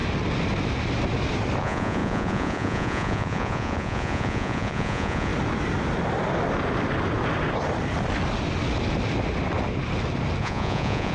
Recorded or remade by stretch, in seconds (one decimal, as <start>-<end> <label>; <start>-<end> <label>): 0.0-1.6 recorded; 1.6-5.3 remade; 5.3-10.4 recorded; 10.4-11.1 remade